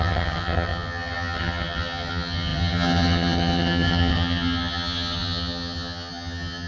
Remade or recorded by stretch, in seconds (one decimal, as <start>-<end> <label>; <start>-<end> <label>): 0.0-6.7 remade